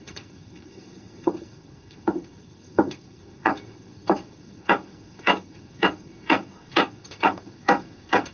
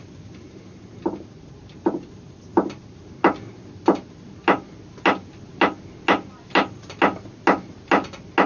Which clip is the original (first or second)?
second